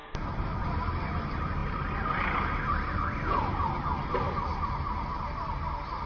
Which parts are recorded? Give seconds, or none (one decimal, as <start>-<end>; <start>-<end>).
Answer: 0.0-6.1